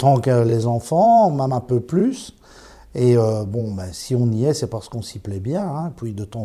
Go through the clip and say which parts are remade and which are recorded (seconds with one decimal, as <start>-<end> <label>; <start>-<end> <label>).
0.0-6.4 remade